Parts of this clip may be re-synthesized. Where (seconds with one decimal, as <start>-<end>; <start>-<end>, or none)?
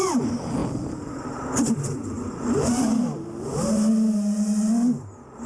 none